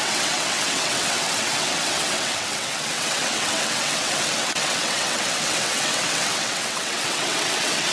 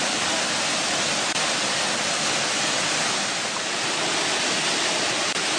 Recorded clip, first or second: second